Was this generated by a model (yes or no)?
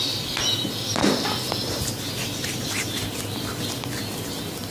no